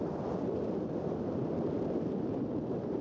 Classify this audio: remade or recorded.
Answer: recorded